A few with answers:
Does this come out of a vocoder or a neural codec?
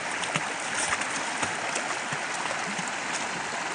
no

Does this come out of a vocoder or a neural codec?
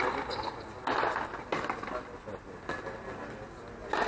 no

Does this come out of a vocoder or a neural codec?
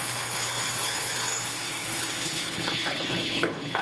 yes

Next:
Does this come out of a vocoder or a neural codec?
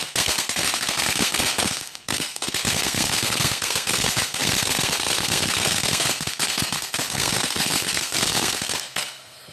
yes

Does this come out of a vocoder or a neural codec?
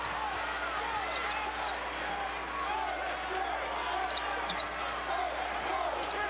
no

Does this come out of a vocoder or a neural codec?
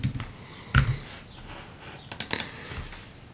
no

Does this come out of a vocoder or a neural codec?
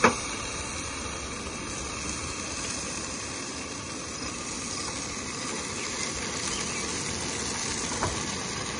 no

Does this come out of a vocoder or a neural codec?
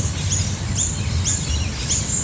yes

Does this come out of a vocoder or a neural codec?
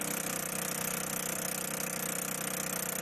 no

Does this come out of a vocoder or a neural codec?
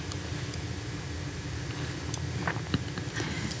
no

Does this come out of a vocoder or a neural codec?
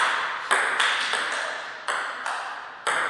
no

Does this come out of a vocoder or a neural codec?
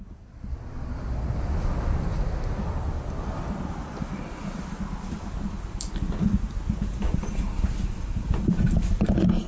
no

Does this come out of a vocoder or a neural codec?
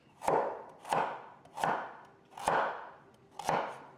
no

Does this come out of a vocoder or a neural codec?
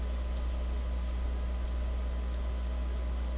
no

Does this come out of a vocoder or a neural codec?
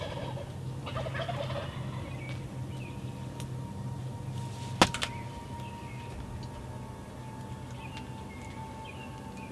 no